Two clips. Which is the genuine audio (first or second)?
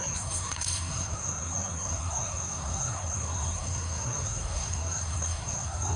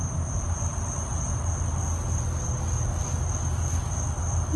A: second